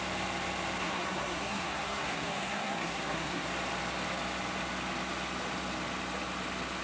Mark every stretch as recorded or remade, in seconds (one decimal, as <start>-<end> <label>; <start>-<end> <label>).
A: 0.0-0.8 recorded; 0.8-3.5 remade; 3.5-6.8 recorded